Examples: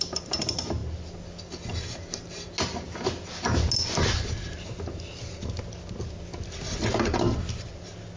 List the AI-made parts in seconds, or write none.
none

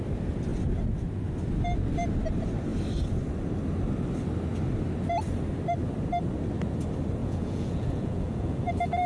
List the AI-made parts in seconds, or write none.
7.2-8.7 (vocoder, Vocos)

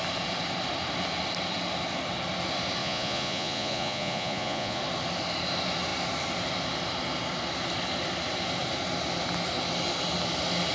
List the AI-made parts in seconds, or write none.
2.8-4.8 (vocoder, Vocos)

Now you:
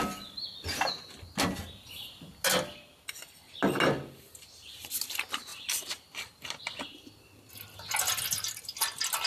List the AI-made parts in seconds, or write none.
none

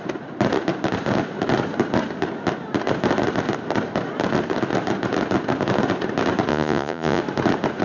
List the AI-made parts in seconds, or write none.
6.5-7.2 (vocoder, Vocos)